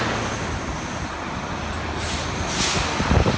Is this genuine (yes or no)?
yes